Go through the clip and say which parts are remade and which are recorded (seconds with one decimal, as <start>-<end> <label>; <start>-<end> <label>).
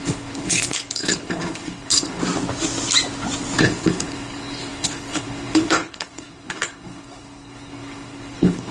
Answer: 0.0-2.2 remade; 2.2-3.6 recorded; 3.6-8.7 remade